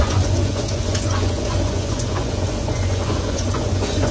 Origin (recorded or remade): remade